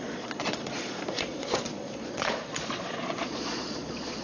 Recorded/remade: remade